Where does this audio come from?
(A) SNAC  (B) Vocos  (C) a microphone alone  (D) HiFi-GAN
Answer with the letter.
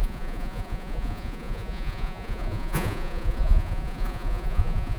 B